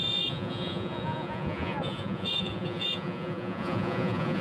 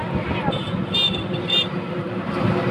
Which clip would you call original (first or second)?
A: second